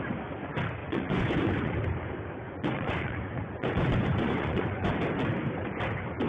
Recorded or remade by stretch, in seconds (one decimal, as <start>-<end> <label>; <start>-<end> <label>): 0.0-0.8 recorded; 0.8-1.7 remade; 1.7-2.4 recorded; 2.4-4.9 remade; 4.9-6.3 recorded